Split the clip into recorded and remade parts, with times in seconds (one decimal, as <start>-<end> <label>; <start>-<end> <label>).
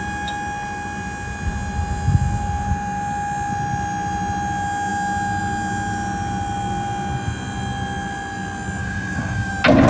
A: 0.0-8.8 recorded; 8.8-9.5 remade; 9.5-9.9 recorded